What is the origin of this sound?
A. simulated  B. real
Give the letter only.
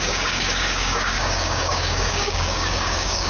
A